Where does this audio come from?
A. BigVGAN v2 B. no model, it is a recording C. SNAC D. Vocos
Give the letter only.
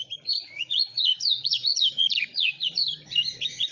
D